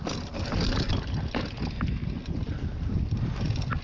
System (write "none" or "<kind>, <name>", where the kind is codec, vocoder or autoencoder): none